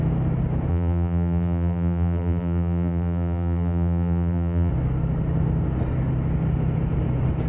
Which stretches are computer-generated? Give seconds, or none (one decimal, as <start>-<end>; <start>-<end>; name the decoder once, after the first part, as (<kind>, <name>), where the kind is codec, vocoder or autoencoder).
0.7-4.7 (vocoder, BigVGAN v2)